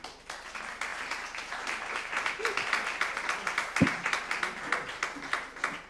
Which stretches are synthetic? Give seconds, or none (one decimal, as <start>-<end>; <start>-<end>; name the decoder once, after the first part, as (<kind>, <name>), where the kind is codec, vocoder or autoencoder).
none